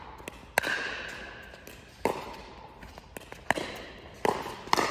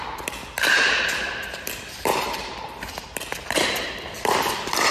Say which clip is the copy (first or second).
second